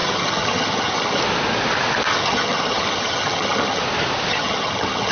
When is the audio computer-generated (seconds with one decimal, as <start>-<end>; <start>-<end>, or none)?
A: 0.0-1.2; 2.1-3.8; 4.3-5.1

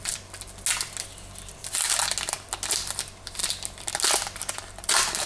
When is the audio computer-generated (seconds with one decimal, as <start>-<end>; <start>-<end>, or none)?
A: none